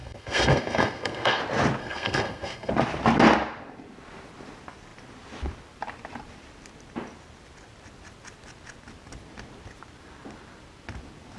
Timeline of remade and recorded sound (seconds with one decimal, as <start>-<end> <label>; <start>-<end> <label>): 0.0-1.4 remade; 1.4-1.8 recorded; 1.8-2.7 remade; 2.7-11.4 recorded